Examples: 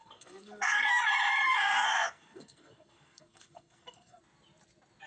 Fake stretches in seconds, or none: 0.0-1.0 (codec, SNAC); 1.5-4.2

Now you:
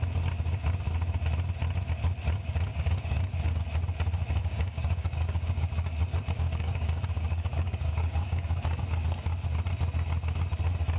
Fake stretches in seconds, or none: 2.7-3.6 (codec, DAC); 4.4-8.8

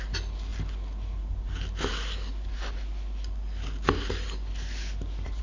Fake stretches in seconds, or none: none

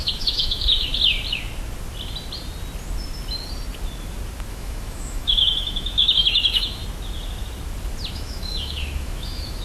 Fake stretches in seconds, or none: 0.0-0.9 (autoencoder, DAC-VAE); 4.5-6.8; 8.1-9.6

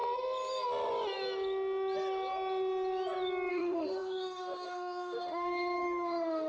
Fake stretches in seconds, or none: 3.5-6.5 (autoencoder, DAC-VAE)

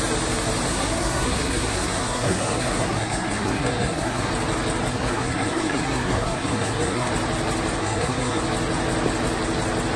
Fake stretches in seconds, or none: 0.7-4.3 (codec, SNAC); 4.9-7.1; 7.8-8.4